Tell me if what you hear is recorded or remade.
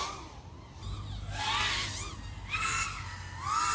recorded